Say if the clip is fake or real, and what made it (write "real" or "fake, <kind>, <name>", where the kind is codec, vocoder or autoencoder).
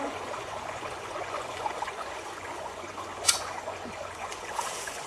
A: fake, vocoder, Vocos